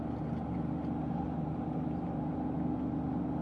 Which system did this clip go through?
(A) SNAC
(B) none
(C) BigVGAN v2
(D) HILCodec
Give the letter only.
B